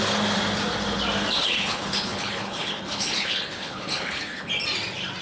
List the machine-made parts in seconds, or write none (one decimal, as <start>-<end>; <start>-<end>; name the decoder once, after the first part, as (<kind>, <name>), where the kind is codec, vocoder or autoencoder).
1.4-4.5 (codec, HILCodec)